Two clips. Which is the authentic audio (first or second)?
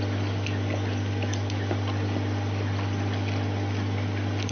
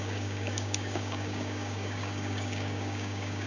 first